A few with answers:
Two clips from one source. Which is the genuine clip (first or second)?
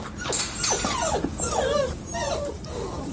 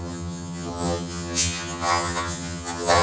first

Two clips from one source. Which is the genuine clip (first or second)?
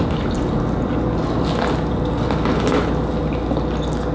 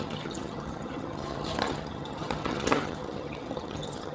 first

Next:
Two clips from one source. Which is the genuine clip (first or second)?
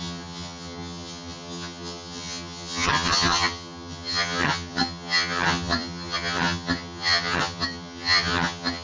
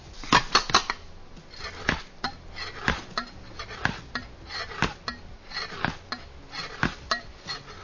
second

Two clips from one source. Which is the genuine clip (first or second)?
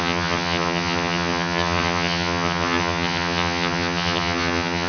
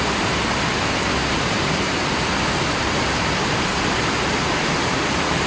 second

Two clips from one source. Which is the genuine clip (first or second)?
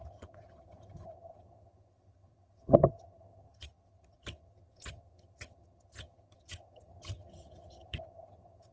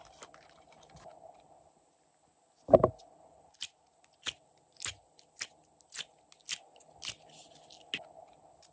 second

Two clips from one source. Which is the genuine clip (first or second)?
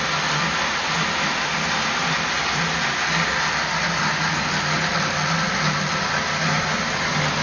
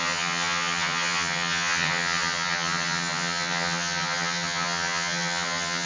first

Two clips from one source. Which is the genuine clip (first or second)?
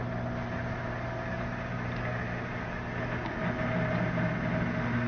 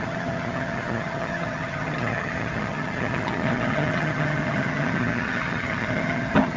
first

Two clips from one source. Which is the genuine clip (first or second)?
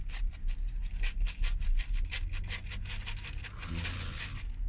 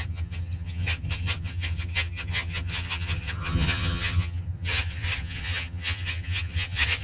first